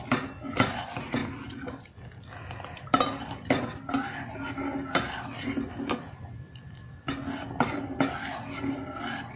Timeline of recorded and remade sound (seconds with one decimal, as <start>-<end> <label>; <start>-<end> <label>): 0.0-9.4 recorded